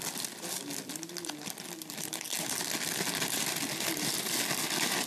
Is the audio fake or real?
real